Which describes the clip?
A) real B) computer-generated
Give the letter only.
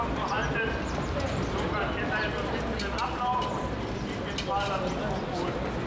A